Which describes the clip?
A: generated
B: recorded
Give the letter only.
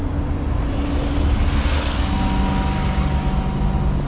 B